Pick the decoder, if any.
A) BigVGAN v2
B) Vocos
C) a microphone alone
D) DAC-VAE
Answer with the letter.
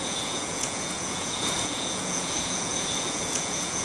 B